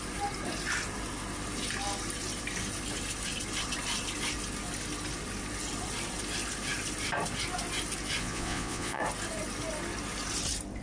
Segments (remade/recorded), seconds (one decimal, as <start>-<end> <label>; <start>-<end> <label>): 0.0-8.2 recorded; 8.2-9.0 remade; 9.0-10.8 recorded